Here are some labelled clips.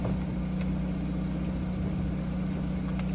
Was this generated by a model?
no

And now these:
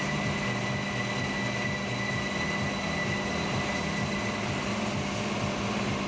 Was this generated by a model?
no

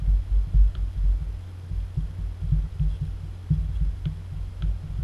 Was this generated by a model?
no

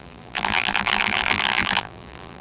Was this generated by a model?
yes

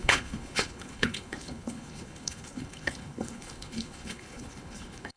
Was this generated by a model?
yes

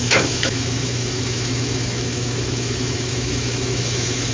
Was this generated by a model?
yes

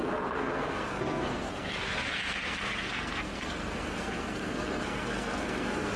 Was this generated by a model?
yes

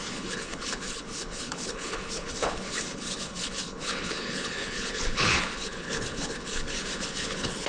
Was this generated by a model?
yes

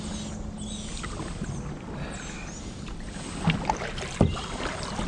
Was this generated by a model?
no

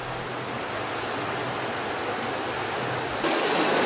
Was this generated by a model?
no